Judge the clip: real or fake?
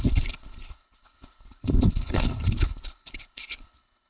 fake